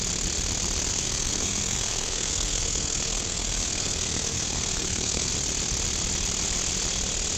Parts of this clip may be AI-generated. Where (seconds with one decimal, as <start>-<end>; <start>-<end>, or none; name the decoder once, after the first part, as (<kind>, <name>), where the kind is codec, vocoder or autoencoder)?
0.9-5.3 (codec, SNAC)